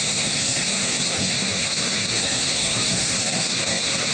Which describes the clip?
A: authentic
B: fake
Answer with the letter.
B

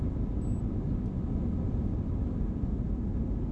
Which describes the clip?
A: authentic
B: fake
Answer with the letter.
A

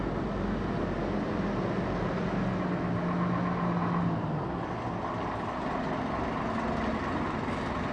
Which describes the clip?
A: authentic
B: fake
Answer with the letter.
A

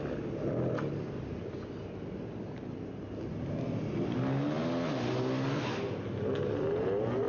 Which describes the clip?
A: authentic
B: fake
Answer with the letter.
A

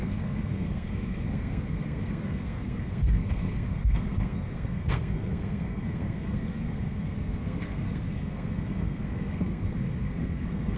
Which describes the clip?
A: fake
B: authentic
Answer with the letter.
A